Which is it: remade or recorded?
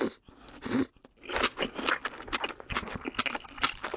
recorded